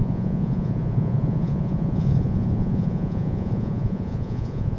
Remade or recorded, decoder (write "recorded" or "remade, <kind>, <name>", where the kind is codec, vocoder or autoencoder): remade, vocoder, Vocos